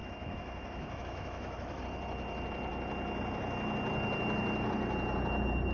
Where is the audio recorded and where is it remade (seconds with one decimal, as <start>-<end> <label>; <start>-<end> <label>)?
0.0-1.8 remade; 1.8-5.7 recorded